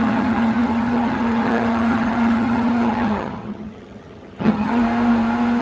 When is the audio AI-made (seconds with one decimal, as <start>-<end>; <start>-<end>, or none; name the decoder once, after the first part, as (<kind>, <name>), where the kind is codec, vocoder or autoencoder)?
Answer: 0.0-4.8 (vocoder, HiFi-GAN)